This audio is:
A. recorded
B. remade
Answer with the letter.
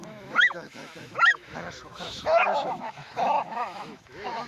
B